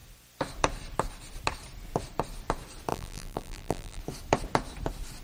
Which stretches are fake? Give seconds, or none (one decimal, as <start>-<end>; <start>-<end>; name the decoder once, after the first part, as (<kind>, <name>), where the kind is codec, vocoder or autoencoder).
2.9-4.0 (vocoder, BigVGAN v2)